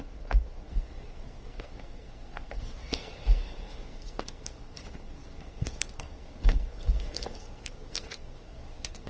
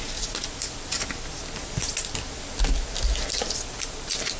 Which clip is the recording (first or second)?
second